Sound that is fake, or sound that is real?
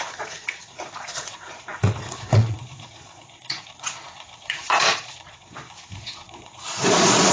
fake